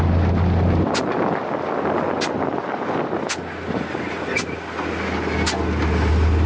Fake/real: real